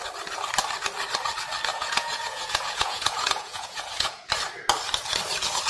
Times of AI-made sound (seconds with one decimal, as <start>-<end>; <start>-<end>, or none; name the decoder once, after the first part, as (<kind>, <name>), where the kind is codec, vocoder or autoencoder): 1.7-4.3 (vocoder, Vocos)